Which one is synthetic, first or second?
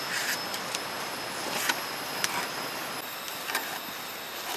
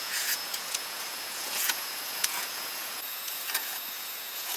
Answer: second